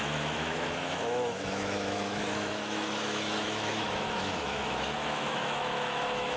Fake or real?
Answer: fake